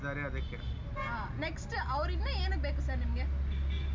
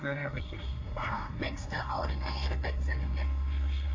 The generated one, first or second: second